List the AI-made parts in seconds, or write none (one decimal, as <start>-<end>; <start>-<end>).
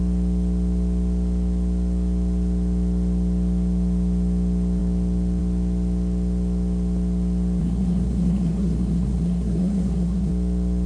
7.6-10.3